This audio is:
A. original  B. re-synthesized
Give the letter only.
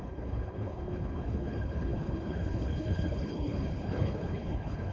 B